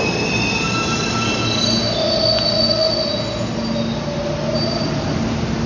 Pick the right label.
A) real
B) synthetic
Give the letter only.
A